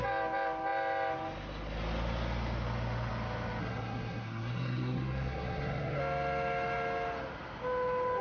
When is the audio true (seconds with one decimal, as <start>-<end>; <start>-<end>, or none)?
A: 0.0-3.6; 6.0-8.2